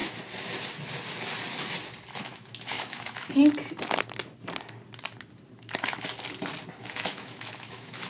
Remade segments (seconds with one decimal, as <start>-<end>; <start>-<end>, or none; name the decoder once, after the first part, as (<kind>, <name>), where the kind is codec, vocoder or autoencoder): 2.1-3.4 (autoencoder, DAC-VAE); 6.8-8.1